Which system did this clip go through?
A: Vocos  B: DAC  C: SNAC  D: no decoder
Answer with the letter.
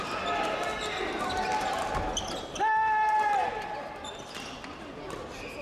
D